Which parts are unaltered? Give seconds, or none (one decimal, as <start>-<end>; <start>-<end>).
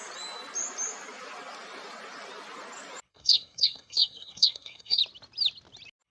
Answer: 0.0-3.1; 5.0-6.1